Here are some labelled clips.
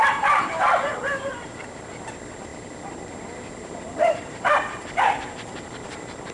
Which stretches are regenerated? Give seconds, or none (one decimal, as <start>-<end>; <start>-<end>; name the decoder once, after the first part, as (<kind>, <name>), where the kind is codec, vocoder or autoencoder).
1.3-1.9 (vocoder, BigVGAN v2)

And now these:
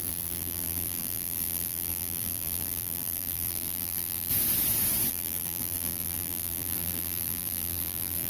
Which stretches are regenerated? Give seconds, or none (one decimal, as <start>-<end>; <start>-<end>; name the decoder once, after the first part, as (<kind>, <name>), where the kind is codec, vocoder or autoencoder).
0.0-4.3 (vocoder, BigVGAN v2); 5.1-8.3

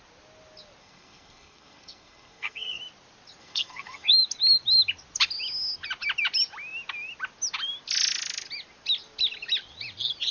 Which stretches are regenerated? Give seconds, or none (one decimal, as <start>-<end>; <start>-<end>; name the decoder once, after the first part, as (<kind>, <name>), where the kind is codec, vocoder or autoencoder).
0.8-2.8 (codec, SNAC); 3.4-4.1

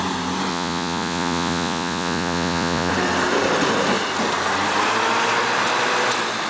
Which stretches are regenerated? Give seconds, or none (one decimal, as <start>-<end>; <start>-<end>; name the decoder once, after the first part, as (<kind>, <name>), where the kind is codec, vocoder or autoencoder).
0.5-2.9 (vocoder, Vocos)

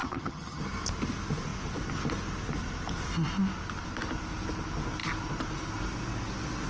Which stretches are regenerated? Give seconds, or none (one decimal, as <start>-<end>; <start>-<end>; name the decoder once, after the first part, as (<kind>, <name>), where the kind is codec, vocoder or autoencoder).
0.0-0.6 (vocoder, HiFi-GAN)

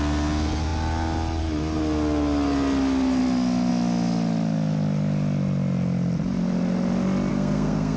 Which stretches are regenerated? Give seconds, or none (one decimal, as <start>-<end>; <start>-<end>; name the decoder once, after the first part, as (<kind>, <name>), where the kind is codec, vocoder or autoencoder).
7.3-8.0 (codec, SNAC)

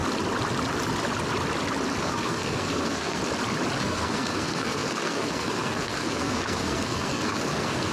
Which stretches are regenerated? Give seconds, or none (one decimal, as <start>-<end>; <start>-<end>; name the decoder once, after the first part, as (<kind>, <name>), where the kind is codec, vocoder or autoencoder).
2.0-3.2 (codec, SNAC); 3.8-7.9

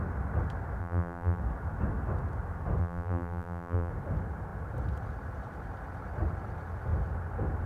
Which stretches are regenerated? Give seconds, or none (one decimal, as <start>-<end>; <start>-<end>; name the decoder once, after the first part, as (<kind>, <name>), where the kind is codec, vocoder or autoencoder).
0.8-1.4 (vocoder, BigVGAN v2); 2.8-3.9